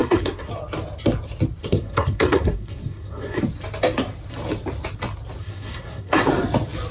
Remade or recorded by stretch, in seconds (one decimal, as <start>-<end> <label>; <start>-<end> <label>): 0.0-0.5 remade; 0.5-1.6 recorded; 1.6-3.4 remade; 3.4-5.4 recorded; 5.4-6.3 remade; 6.3-6.9 recorded